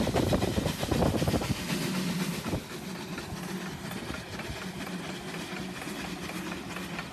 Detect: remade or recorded recorded